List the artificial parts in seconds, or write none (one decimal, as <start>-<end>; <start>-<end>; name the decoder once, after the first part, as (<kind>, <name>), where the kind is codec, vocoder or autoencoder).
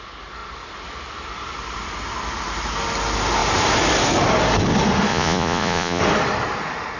5.1-6.0 (vocoder, Vocos)